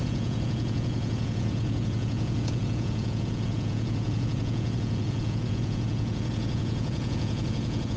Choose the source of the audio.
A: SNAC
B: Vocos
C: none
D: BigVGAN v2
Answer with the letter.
B